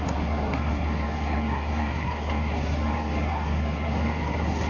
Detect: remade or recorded remade